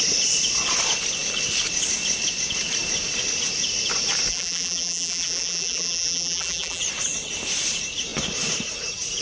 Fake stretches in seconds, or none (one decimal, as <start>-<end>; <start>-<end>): 4.3-6.8